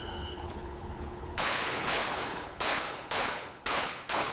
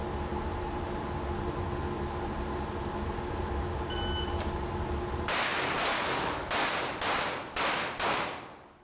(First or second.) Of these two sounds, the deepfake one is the first